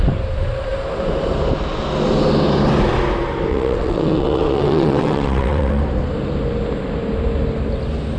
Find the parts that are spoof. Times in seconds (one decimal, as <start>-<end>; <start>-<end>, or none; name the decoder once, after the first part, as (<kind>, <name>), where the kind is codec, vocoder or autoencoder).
3.5-5.8 (vocoder, WaveNeXt)